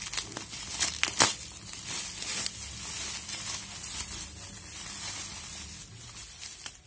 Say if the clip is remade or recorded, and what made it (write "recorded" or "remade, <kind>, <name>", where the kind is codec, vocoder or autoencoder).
recorded